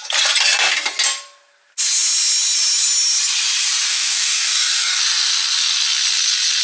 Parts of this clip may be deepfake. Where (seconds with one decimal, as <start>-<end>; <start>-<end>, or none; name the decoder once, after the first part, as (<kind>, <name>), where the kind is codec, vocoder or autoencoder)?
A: 3.9-5.0 (codec, DAC)